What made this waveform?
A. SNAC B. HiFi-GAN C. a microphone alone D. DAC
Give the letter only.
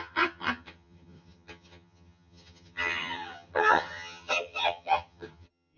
B